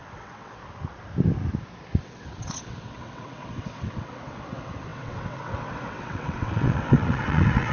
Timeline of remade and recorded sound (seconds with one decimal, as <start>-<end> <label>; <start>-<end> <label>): 0.0-0.6 remade; 0.6-2.0 recorded; 2.0-7.7 remade